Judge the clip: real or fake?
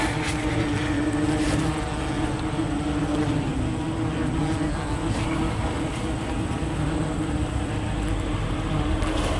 real